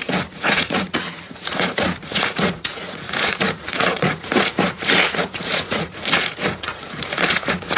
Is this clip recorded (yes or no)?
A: no